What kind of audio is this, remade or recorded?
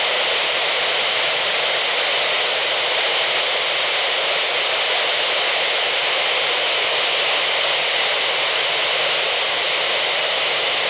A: recorded